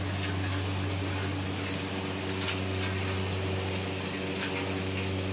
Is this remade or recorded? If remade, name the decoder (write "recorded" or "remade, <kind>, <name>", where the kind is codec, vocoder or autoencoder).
recorded